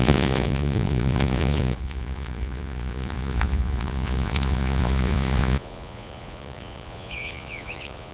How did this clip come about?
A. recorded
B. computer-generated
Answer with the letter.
B